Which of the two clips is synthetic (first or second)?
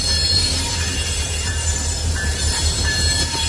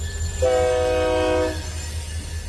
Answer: first